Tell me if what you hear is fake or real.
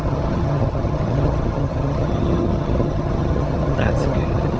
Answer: fake